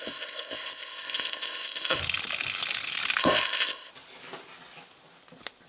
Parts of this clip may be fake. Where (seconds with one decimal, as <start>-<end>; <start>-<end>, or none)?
0.0-2.0; 3.2-3.9